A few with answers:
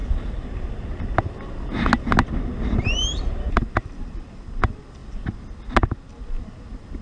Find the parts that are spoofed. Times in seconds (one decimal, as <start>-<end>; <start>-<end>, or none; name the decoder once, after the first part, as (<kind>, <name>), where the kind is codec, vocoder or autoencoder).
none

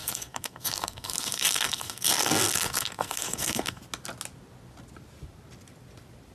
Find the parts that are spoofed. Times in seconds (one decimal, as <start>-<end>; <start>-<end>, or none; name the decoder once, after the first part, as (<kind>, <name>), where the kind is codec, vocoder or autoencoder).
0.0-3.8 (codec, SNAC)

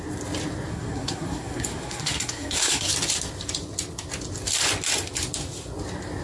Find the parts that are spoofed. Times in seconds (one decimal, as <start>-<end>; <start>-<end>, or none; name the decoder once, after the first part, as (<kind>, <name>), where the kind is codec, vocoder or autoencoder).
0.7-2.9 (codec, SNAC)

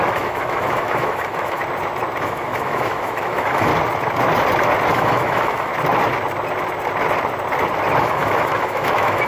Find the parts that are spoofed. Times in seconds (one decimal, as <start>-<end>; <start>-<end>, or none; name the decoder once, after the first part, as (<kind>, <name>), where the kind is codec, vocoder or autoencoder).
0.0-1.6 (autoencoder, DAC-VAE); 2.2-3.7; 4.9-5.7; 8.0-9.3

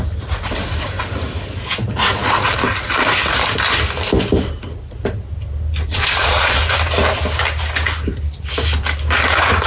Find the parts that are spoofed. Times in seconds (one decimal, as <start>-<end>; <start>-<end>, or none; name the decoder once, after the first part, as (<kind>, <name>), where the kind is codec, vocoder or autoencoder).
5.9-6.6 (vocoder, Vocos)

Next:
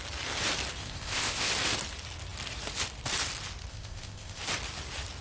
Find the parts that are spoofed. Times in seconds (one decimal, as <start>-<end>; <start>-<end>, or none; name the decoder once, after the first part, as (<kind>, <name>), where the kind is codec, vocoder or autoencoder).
0.8-1.5 (codec, ZipCodec); 3.7-4.4

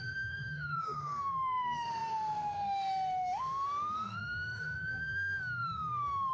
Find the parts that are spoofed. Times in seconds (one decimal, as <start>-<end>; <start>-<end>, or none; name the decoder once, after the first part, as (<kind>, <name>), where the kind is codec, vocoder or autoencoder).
0.0-6.3 (autoencoder, DAC-VAE)

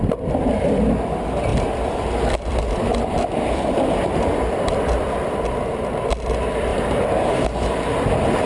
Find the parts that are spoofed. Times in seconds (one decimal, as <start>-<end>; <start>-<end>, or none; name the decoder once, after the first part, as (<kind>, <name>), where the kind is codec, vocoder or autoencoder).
1.5-6.0 (vocoder, BigVGAN v2)